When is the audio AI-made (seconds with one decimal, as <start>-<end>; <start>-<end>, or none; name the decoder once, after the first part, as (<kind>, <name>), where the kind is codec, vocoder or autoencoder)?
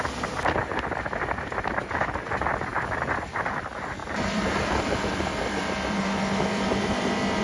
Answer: 4.0-7.4 (vocoder, BigVGAN v2)